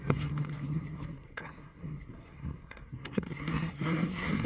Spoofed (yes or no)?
yes